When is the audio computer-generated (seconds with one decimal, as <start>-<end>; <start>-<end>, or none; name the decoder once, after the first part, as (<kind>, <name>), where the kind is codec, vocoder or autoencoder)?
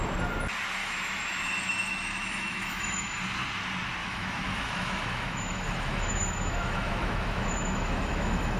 0.8-3.2 (autoencoder, DAC-VAE); 4.0-8.6